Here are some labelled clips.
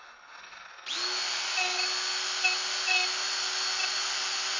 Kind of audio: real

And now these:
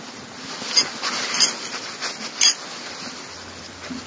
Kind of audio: real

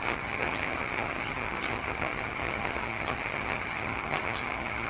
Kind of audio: fake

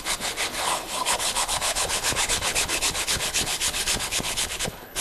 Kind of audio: fake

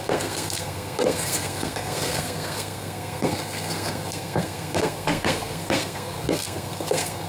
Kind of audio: fake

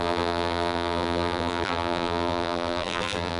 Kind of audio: fake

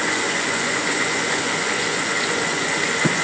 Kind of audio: fake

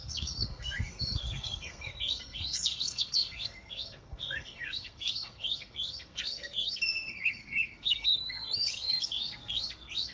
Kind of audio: fake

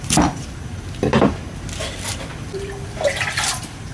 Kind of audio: fake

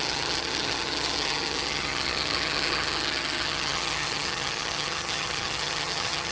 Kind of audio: fake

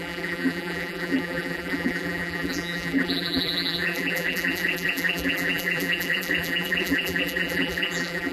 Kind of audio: fake